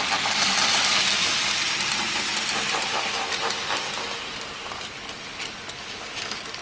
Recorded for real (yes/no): yes